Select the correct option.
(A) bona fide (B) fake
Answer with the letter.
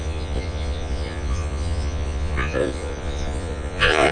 B